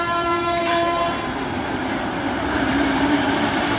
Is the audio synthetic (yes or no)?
yes